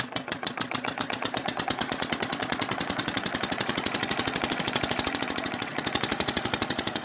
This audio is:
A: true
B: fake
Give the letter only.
B